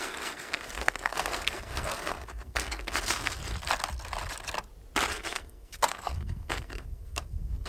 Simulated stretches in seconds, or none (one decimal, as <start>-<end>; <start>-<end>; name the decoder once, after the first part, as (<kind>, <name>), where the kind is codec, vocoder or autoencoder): 0.0-3.4 (codec, SNAC); 5.1-7.7